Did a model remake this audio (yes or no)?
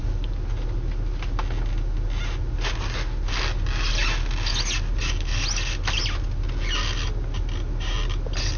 no